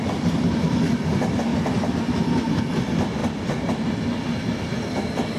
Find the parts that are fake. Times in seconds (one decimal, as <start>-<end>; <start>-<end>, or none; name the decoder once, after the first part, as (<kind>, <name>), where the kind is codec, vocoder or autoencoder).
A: none